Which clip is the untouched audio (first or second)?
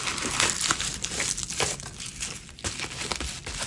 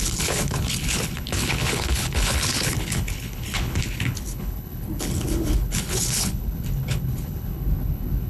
first